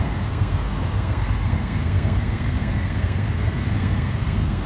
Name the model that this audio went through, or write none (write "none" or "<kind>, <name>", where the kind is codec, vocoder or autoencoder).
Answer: codec, SNAC